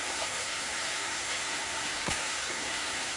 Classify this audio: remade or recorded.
remade